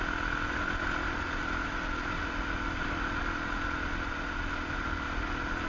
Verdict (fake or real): real